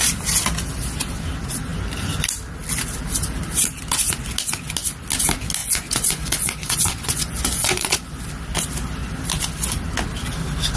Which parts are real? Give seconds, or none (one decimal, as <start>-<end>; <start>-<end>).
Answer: 0.0-5.6; 8.2-10.8